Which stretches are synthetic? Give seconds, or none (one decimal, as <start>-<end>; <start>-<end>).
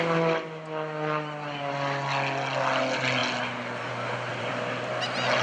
4.3-4.9